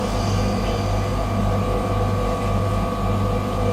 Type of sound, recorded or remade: recorded